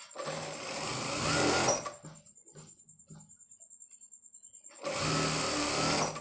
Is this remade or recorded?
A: recorded